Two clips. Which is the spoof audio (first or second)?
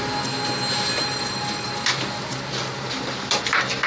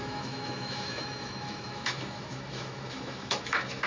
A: second